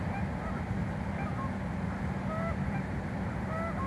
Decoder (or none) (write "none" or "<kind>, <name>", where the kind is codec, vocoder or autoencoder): none